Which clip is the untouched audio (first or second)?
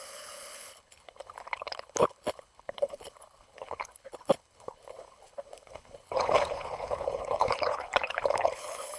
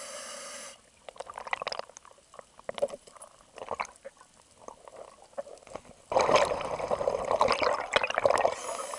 second